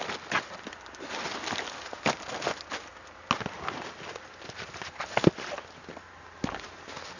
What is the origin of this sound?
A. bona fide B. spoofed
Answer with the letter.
A